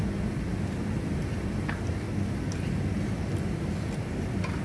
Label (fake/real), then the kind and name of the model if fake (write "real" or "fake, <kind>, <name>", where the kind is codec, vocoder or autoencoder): real